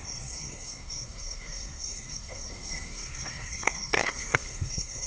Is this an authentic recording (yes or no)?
no